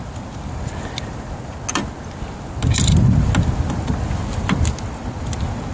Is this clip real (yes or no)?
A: yes